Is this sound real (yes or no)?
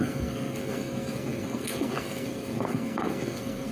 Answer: no